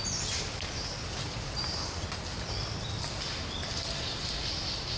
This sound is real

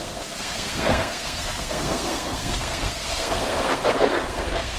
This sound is fake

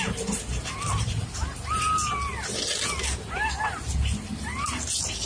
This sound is real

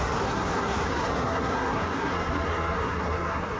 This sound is fake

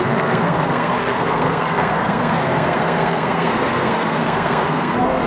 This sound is fake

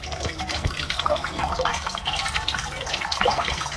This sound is fake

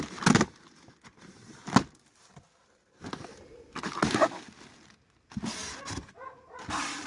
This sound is real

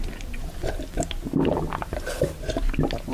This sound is real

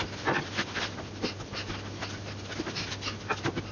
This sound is real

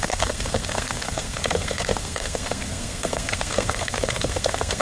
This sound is fake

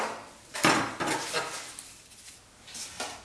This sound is real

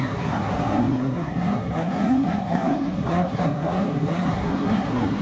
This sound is fake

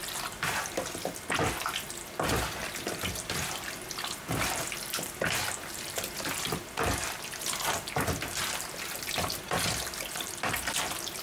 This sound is real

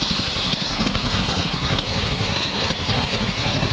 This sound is fake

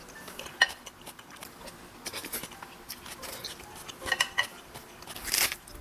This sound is real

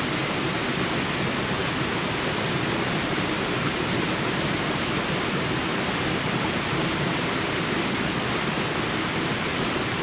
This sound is real